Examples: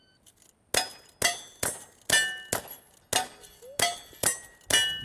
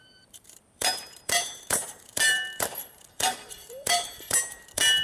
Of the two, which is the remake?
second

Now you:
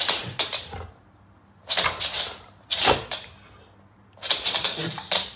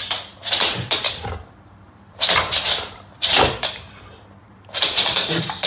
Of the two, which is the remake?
second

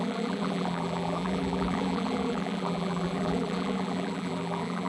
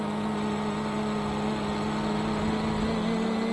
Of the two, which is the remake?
first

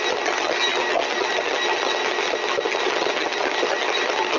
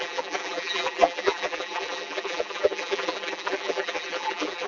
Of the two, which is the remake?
second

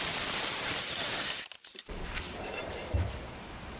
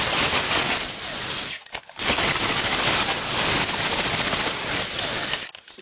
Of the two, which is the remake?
first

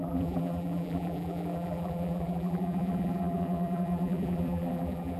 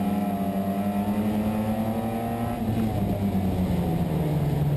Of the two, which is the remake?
first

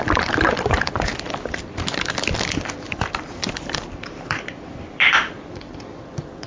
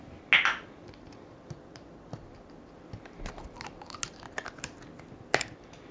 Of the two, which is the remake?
first